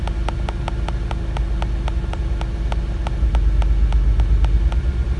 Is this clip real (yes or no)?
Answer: yes